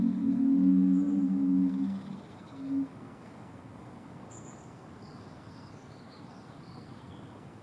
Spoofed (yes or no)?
yes